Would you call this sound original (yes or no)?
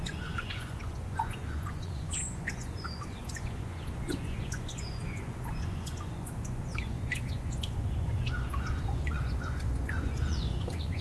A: no